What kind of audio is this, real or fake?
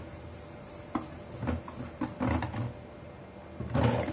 real